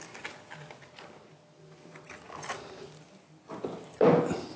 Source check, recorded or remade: recorded